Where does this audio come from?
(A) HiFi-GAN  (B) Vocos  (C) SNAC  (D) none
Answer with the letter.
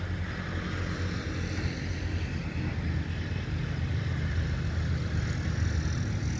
D